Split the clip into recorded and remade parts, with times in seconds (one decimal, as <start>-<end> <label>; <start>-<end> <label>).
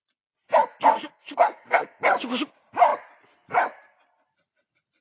0.0-0.9 recorded; 0.9-2.0 remade; 2.0-5.0 recorded